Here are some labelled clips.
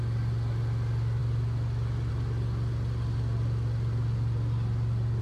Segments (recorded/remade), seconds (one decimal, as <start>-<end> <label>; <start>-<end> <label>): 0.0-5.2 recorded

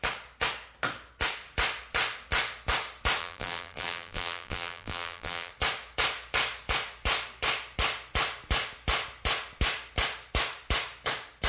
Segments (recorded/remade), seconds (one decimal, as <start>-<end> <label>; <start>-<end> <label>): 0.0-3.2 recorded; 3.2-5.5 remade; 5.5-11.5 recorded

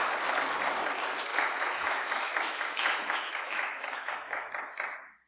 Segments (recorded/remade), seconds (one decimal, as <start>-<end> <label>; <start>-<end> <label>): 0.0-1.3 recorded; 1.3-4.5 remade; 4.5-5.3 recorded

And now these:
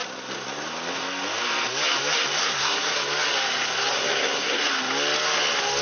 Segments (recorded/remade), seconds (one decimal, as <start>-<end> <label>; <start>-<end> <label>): 0.0-2.4 recorded; 2.4-2.9 remade; 2.9-3.9 recorded; 3.9-4.6 remade; 4.6-5.8 recorded

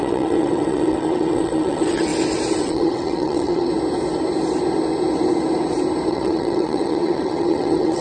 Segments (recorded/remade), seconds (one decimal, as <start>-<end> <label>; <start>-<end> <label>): 0.0-2.1 remade; 2.1-2.6 recorded; 2.6-3.7 remade; 3.7-6.1 recorded; 6.1-8.0 remade

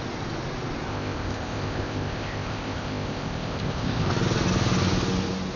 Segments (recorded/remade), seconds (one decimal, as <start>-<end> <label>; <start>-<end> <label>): 0.0-0.9 recorded; 0.9-4.1 remade; 4.1-5.6 recorded

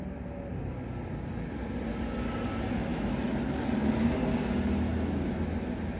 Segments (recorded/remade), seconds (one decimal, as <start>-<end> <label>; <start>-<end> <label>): 0.0-6.0 recorded